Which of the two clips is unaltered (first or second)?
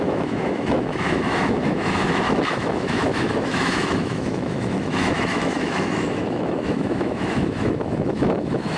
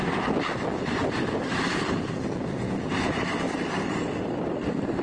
second